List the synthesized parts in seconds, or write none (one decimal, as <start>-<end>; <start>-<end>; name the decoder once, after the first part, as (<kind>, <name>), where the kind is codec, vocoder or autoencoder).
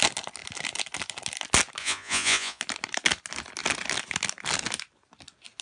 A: 1.8-2.6 (vocoder, Vocos)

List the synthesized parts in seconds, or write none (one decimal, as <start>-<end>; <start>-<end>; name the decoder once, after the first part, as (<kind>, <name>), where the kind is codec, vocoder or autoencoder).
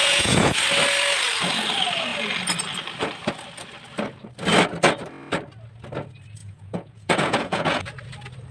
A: 0.0-0.6 (vocoder, Vocos); 6.4-7.8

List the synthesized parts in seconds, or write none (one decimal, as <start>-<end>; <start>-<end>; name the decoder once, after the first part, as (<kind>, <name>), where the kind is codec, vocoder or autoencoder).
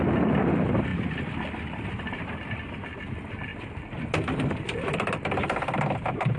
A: none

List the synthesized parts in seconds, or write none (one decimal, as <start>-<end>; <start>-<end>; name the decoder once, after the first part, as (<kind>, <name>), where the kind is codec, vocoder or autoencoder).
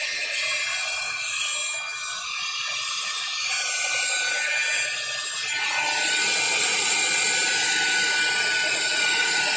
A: 0.0-1.5 (vocoder, Vocos); 2.4-3.3; 6.6-7.0; 8.7-9.6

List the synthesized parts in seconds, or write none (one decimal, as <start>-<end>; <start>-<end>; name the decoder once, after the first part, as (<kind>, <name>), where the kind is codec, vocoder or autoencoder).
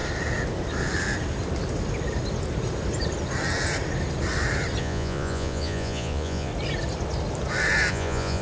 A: 4.8-6.5 (vocoder, Vocos); 7.9-8.4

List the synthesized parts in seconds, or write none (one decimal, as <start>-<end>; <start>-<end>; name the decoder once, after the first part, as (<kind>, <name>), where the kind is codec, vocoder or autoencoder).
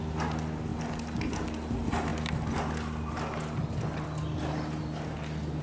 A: none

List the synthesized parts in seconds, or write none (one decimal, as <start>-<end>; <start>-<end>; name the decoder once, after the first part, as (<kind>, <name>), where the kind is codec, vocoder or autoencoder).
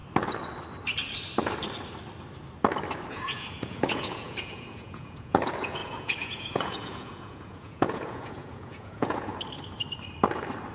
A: 3.1-9.3 (vocoder, Vocos)